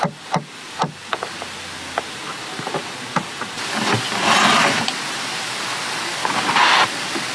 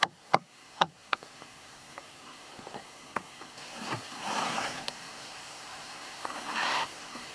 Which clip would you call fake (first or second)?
second